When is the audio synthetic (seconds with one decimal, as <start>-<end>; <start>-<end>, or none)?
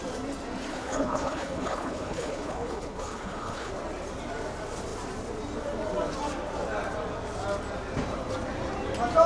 0.7-3.7